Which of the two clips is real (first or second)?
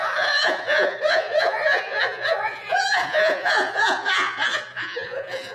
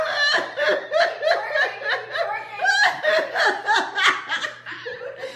second